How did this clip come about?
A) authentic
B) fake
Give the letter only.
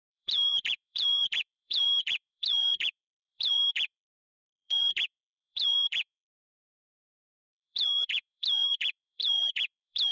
B